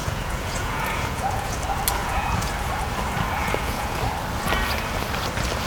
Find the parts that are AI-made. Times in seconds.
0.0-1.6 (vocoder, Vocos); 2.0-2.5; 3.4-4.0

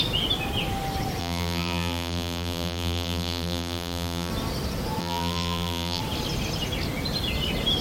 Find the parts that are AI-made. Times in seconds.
1.2-4.3 (vocoder, BigVGAN v2); 5.0-6.0

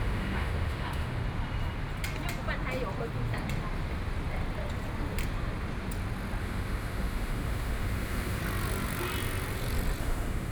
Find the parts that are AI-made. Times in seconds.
0.0-1.2 (autoencoder, DAC-VAE); 6.4-8.4; 10.0-10.5

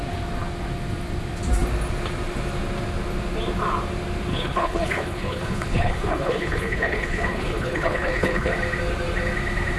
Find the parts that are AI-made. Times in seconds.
4.3-8.5 (codec, HILCodec)